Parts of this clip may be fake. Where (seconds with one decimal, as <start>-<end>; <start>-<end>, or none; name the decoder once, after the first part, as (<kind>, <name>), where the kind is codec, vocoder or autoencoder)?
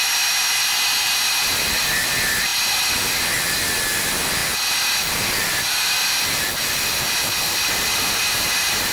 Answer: none